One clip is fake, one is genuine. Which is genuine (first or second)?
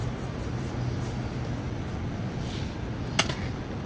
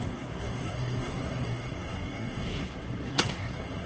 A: first